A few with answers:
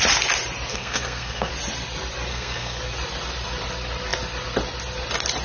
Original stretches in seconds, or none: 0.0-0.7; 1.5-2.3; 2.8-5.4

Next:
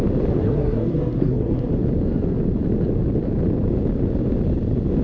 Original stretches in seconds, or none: 0.0-0.4; 1.7-5.0

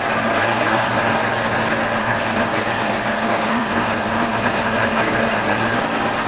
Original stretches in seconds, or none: 0.0-0.4; 1.0-2.0; 5.8-6.3

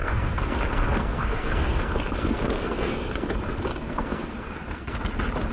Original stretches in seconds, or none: 3.3-3.7; 5.1-5.5

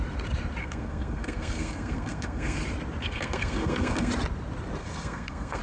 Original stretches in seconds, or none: 0.0-0.6; 2.6-3.0; 4.1-4.8

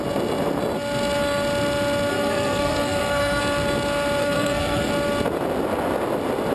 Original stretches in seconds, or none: 0.0-2.1; 3.4-4.2; 4.9-6.5

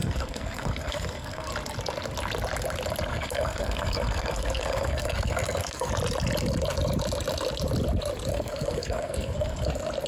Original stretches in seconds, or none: 1.5-3.1; 5.9-8.3; 9.7-10.1